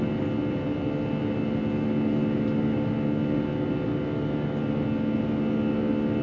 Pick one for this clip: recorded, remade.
recorded